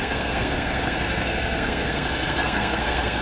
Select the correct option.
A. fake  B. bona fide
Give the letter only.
A